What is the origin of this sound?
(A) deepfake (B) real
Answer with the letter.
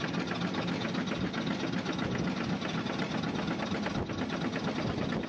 B